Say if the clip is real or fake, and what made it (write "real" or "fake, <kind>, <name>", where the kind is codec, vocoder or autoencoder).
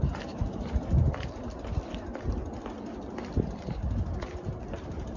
real